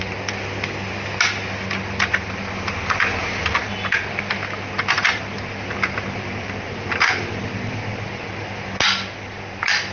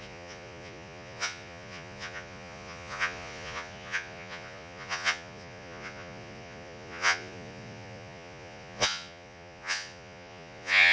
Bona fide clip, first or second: first